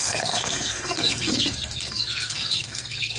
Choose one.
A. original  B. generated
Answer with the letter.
B